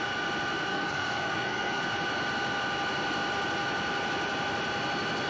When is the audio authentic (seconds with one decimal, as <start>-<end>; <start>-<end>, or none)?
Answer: 0.0-0.7; 1.8-5.3